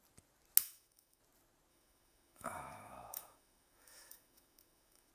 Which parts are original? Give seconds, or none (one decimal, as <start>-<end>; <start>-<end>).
0.0-0.6; 1.2-1.7

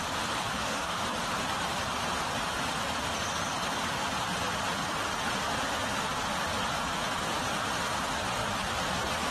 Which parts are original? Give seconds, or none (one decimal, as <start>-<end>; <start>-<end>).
0.0-0.5; 1.0-9.3

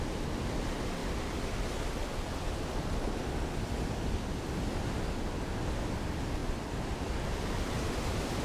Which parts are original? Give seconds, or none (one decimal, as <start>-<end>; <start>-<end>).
0.0-8.4

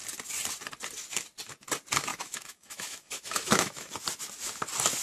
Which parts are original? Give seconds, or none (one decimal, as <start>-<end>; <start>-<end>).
0.0-2.1; 3.9-5.0

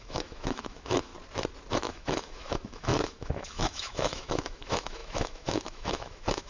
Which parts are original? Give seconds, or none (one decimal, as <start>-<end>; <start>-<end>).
1.1-1.7

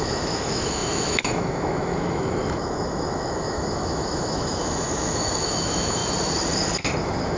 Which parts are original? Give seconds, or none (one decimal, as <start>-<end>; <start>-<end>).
6.0-7.0